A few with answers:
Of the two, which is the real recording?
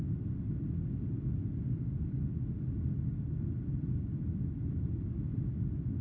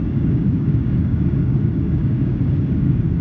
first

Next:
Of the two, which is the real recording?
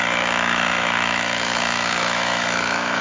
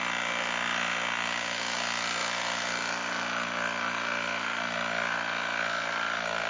second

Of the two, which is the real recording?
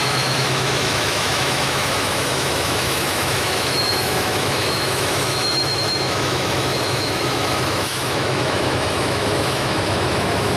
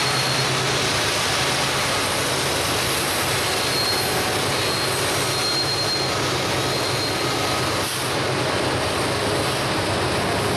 second